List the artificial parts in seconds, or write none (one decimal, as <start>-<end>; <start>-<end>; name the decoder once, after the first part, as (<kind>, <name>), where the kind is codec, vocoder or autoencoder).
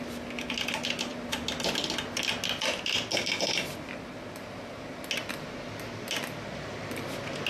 none